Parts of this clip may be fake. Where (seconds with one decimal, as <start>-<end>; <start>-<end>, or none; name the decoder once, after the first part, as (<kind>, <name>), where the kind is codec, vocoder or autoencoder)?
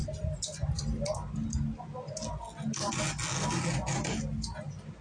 none